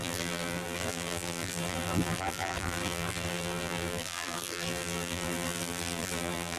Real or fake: fake